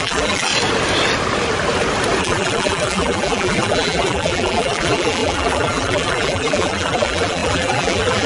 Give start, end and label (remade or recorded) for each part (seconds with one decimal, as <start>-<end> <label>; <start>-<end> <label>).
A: 0.0-0.5 remade; 0.5-2.2 recorded; 2.2-8.3 remade